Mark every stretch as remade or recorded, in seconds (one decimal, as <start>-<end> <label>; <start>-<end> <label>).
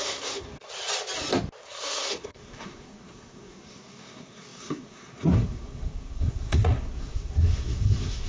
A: 0.0-0.7 remade; 0.7-1.6 recorded; 1.6-8.3 remade